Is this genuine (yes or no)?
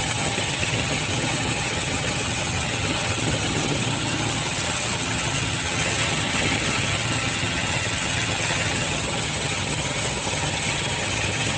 no